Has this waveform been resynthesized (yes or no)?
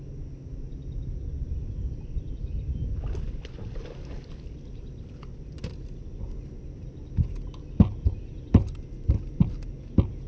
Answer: no